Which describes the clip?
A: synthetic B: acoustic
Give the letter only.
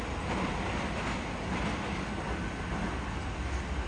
B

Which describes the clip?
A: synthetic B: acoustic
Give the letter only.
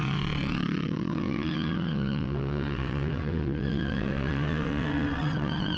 A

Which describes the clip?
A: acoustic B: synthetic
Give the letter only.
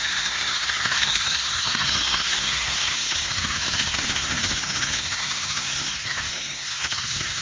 B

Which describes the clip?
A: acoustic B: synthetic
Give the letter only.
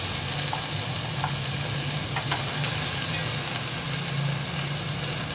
A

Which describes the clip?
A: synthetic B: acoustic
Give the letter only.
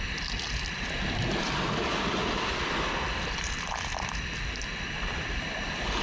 B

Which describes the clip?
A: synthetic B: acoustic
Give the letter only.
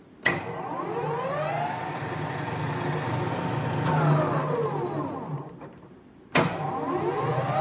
B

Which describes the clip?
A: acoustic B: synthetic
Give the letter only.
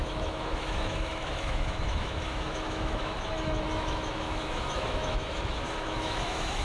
B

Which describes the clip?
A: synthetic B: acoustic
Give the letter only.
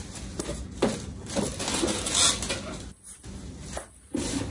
B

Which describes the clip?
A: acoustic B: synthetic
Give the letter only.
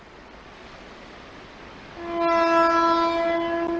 A